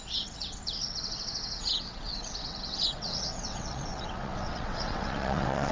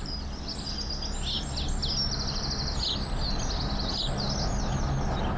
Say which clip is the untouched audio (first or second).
second